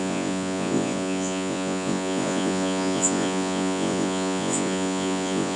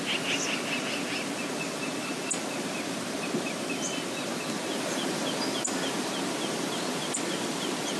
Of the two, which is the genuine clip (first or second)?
second